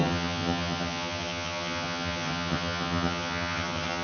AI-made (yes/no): yes